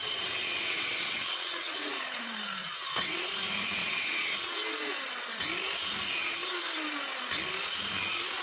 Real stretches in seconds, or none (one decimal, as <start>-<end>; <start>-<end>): 2.2-2.6; 3.3-3.8; 4.5-8.4